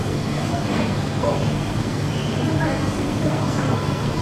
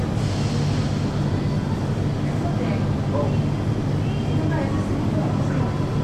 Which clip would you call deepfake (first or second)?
first